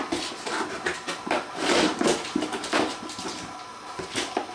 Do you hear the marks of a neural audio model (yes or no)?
no